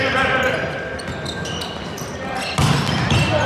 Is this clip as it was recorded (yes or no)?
yes